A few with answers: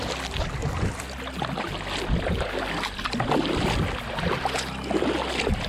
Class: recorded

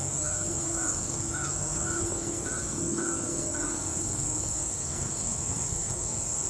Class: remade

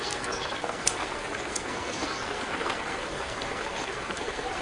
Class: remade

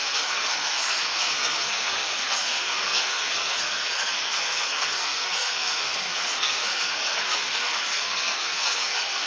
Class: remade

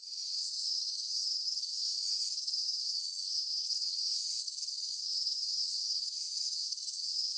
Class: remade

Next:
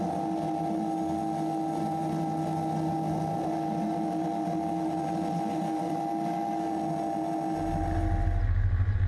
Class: recorded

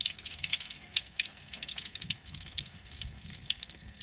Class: remade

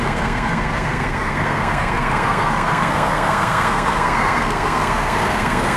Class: remade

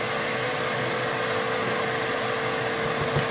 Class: recorded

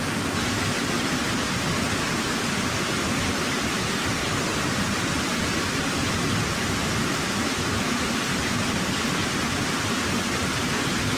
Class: recorded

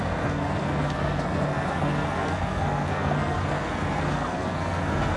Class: remade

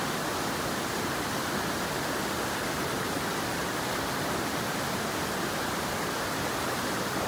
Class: recorded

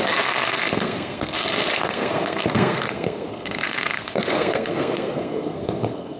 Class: remade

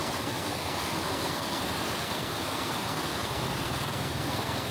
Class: remade